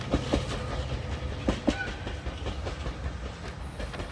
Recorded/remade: recorded